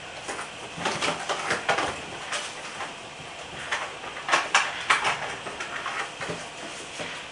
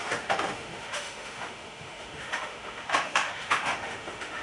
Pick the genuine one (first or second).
first